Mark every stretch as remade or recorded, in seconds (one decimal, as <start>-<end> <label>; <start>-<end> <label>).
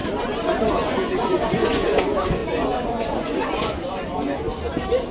0.0-0.7 recorded; 0.7-4.4 remade; 4.4-5.1 recorded